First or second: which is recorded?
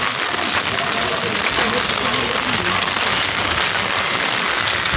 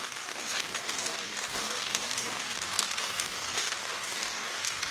first